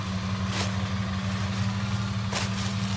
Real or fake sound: real